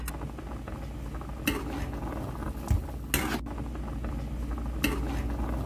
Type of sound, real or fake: real